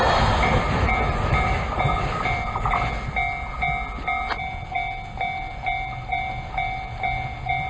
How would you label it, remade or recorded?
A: recorded